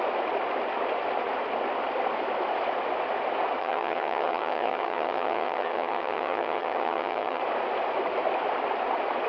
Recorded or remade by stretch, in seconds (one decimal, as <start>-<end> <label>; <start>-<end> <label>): 0.0-3.6 recorded; 3.6-7.4 remade; 7.4-9.3 recorded